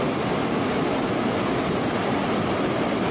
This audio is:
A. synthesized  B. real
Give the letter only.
B